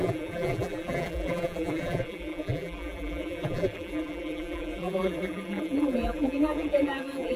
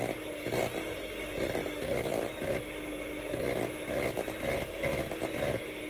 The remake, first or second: first